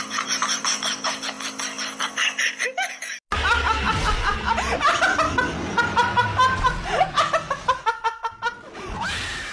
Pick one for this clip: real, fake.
real